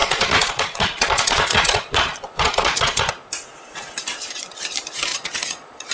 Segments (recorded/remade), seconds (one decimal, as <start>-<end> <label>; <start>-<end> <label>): 0.0-3.1 remade; 3.1-5.1 recorded; 5.1-5.9 remade